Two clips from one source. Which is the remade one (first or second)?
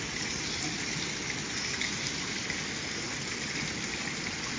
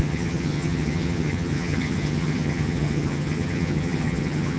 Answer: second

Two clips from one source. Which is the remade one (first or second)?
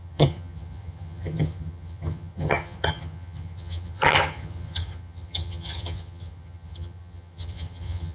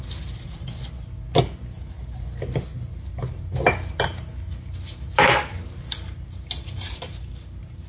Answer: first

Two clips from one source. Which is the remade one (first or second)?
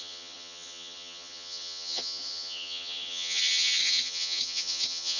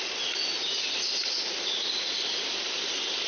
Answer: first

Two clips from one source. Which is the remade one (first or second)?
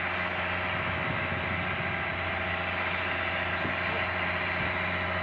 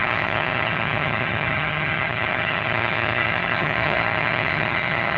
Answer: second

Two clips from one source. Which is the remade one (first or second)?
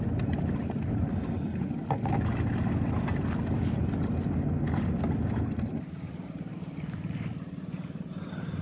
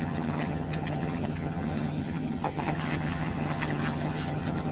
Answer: second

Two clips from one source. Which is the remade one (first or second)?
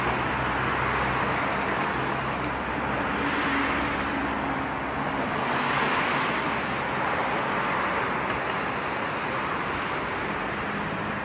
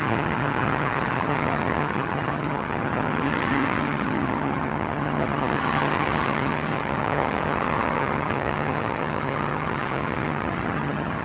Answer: second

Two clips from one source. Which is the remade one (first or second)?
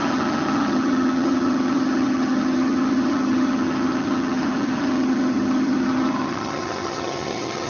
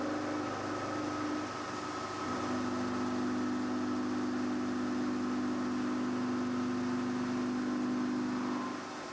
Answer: first